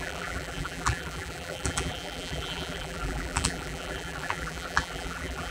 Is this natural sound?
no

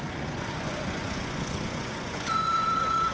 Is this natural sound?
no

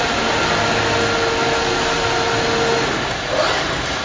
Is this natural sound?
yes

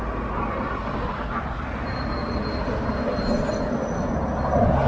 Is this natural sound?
yes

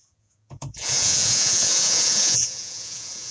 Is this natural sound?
no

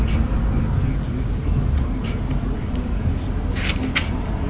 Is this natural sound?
yes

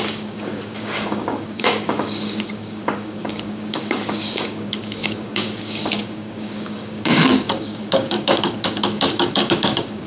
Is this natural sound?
no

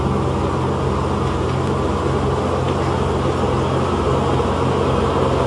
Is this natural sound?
yes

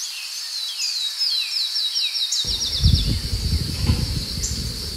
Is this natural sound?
yes